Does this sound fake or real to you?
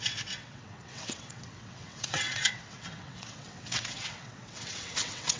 fake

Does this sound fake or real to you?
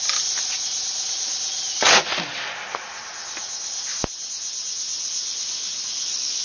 real